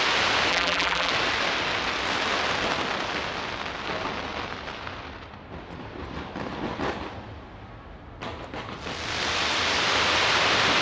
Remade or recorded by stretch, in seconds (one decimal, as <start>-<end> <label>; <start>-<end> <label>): 0.0-0.5 recorded; 0.5-1.1 remade; 1.1-10.8 recorded